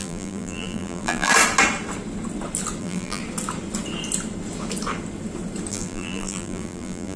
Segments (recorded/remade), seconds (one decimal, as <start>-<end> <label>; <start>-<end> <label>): 0.0-1.3 remade; 1.3-2.8 recorded; 2.8-3.2 remade; 3.2-5.7 recorded; 5.7-7.2 remade